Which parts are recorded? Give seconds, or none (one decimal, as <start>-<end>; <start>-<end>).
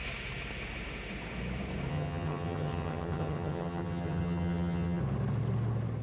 0.0-1.9; 5.0-6.0